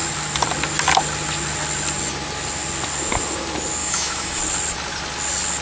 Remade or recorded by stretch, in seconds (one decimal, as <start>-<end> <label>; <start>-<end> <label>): 0.0-3.8 recorded; 3.8-4.4 remade; 4.4-5.6 recorded

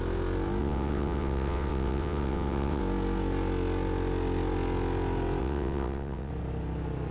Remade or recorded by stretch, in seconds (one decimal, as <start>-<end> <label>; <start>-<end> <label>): 0.0-0.6 recorded; 0.6-2.8 remade; 2.8-5.4 recorded; 5.4-6.3 remade; 6.3-7.1 recorded

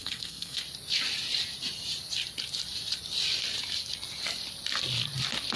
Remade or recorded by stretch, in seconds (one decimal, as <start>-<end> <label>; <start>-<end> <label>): 0.0-0.6 remade; 0.6-5.6 recorded